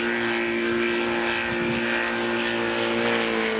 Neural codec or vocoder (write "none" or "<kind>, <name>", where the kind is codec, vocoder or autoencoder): none